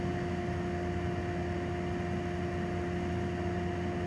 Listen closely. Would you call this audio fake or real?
real